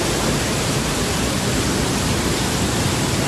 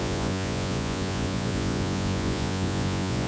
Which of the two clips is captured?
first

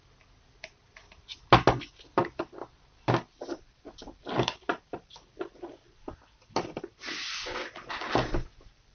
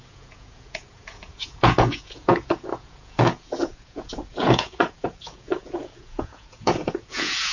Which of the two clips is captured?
first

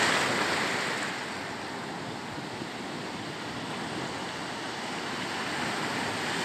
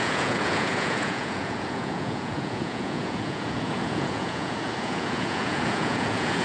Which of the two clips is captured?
first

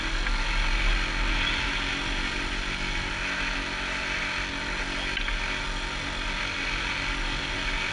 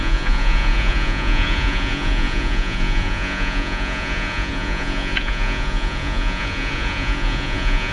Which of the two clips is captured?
first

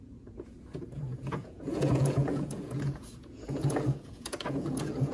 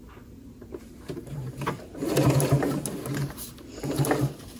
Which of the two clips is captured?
second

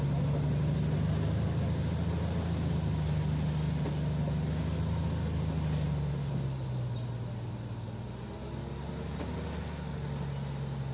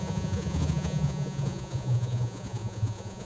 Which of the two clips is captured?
first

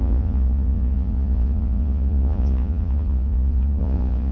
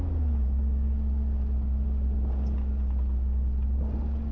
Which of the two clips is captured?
second